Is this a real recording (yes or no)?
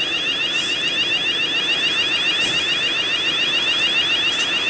yes